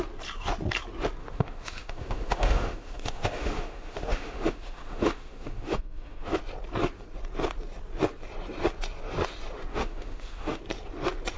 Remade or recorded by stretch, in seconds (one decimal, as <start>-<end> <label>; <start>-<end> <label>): 0.0-1.2 recorded; 1.2-6.4 remade; 6.4-9.7 recorded; 9.7-10.6 remade; 10.6-11.4 recorded